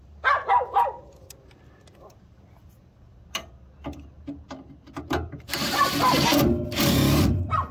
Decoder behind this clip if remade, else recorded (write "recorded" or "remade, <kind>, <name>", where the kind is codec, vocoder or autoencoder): recorded